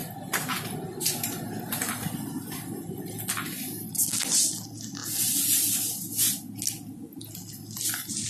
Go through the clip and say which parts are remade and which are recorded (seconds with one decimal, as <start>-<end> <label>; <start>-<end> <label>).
0.0-8.3 recorded